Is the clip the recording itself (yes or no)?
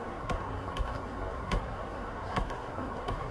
no